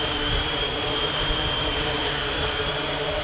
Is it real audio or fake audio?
fake